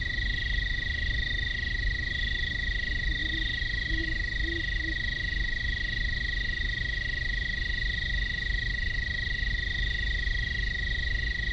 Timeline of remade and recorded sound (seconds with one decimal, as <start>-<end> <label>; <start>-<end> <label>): 0.0-3.2 recorded; 3.2-4.0 remade; 4.0-11.5 recorded